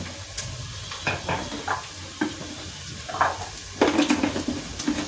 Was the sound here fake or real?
real